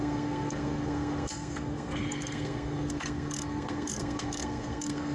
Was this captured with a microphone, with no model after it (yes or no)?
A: no